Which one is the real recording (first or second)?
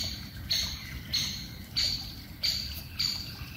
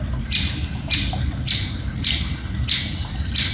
second